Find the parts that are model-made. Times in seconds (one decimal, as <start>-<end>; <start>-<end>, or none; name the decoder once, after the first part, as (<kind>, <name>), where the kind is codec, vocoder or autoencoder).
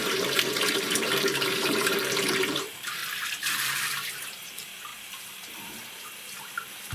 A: 0.0-3.0 (vocoder, BigVGAN v2); 3.6-6.9